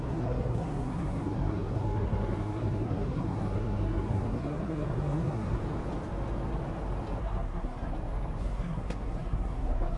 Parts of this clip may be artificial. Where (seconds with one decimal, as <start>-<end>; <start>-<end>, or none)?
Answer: 0.0-5.6; 7.2-7.9; 8.4-10.0